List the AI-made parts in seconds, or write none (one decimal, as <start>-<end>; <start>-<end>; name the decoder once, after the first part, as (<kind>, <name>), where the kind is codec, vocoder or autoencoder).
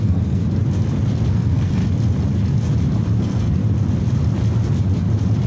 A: 0.0-0.4 (codec, SNAC); 1.3-1.8; 3.2-3.6